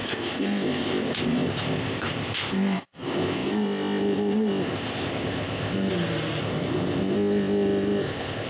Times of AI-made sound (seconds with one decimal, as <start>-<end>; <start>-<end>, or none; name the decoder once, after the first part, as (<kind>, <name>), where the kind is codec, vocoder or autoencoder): 0.0-5.9 (codec, ZipCodec); 6.4-8.5